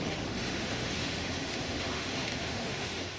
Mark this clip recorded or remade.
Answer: remade